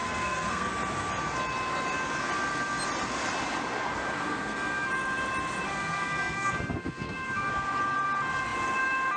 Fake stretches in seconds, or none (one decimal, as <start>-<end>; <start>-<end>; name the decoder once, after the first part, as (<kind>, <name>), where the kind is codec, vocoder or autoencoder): 0.0-0.7 (codec, SNAC); 4.3-4.9; 5.7-7.5

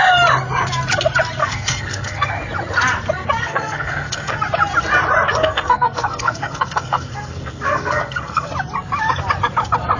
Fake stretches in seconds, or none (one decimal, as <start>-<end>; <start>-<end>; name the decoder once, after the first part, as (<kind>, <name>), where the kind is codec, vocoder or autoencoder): 1.4-2.3 (codec, SNAC); 3.4-4.3; 5.4-8.5

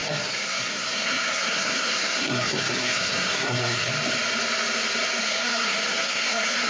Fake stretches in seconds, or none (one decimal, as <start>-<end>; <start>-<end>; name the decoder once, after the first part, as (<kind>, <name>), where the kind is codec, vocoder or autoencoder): 0.0-3.9 (codec, SNAC); 5.2-6.7

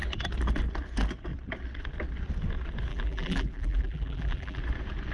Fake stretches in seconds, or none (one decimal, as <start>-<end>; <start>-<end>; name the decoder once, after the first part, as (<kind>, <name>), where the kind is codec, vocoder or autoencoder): 2.9-4.6 (vocoder, BigVGAN v2)

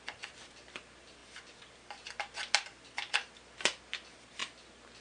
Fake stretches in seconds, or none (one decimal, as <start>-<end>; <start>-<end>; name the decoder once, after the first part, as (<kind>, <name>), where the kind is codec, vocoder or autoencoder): none

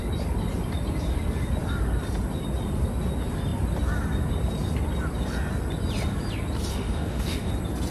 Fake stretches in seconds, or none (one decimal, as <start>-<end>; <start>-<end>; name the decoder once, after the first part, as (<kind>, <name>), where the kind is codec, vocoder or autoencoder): 6.7-7.5 (autoencoder, DAC-VAE)